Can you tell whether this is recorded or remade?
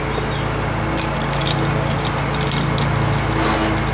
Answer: recorded